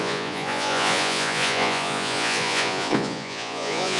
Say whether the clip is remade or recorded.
remade